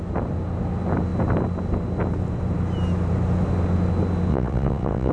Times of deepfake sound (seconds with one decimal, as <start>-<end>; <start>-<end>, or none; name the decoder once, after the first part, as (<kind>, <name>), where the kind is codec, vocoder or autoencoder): 4.3-5.1 (vocoder, WaveNeXt)